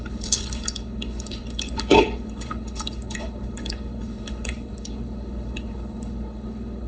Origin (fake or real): fake